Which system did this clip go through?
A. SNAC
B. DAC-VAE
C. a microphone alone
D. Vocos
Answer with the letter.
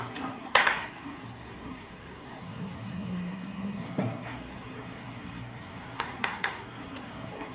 A